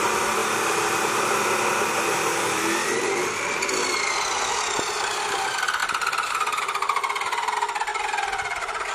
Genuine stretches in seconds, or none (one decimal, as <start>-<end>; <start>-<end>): 0.4-5.2

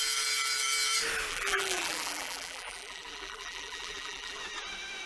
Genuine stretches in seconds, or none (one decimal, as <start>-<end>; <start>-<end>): 0.0-1.3; 4.4-5.1